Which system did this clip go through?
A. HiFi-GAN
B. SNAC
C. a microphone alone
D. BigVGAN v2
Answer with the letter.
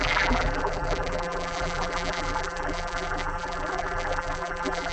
D